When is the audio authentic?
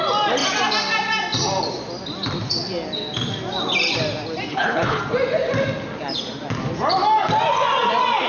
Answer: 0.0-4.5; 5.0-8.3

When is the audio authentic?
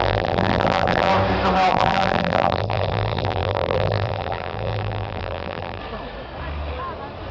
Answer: 1.1-1.7; 5.8-7.3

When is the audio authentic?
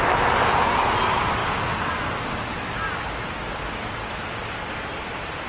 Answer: 0.0-5.5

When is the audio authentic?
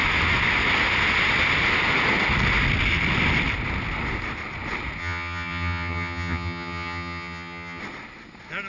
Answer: 0.0-5.0; 7.8-8.7